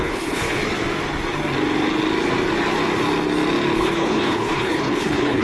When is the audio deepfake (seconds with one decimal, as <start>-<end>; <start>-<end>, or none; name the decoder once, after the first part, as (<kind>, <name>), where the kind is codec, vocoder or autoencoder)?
0.0-0.6 (codec, HILCodec); 3.8-5.4